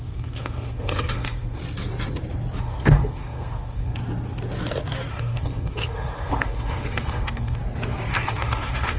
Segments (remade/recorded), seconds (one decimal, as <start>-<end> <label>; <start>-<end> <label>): 0.0-1.6 remade; 1.6-2.6 recorded; 2.6-4.0 remade; 4.0-5.1 recorded; 5.1-7.6 remade; 7.6-8.1 recorded; 8.1-9.0 remade